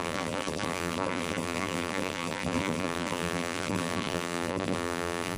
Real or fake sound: fake